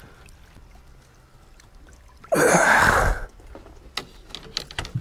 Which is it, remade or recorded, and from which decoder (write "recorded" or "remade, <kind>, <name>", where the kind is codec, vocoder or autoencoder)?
recorded